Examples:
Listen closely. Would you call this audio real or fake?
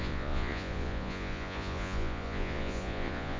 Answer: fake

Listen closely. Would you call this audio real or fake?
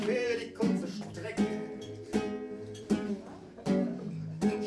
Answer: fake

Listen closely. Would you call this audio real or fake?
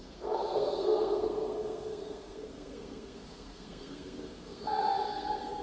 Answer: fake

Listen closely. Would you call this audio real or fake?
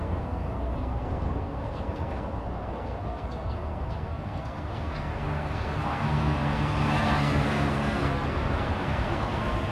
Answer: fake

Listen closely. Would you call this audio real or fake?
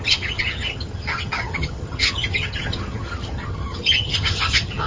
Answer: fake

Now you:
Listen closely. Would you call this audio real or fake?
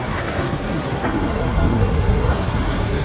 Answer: fake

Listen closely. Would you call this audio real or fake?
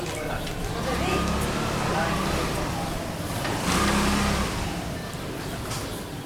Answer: real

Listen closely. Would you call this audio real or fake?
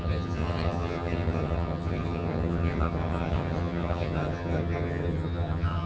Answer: fake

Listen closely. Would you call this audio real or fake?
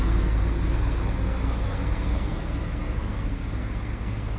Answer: fake